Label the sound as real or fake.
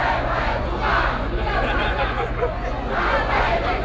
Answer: fake